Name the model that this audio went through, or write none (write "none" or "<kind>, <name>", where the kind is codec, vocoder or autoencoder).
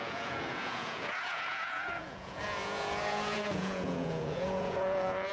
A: vocoder, Vocos